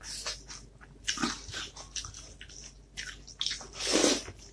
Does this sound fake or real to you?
real